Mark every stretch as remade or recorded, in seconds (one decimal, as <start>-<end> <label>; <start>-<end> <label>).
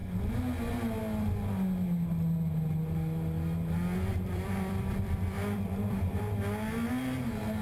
0.0-4.1 recorded; 4.1-6.2 remade; 6.2-7.6 recorded